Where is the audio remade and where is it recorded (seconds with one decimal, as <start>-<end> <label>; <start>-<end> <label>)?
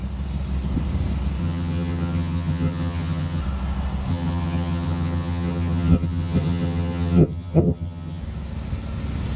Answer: 0.0-1.4 recorded; 1.4-3.4 remade; 3.4-4.1 recorded; 4.1-8.2 remade; 8.2-9.4 recorded